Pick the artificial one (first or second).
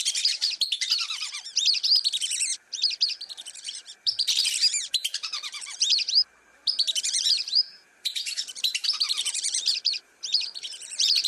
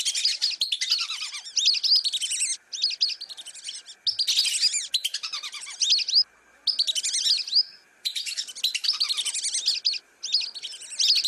first